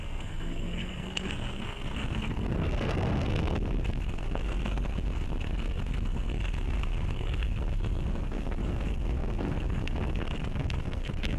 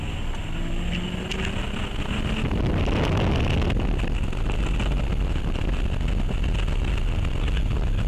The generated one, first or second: first